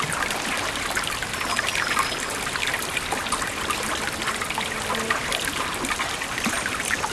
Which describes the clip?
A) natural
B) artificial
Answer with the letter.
A